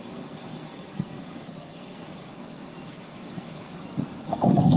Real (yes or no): no